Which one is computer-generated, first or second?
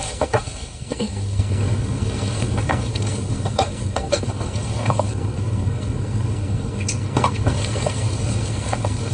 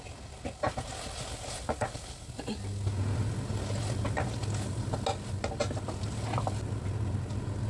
first